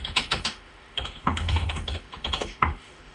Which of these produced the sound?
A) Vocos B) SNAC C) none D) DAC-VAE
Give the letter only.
D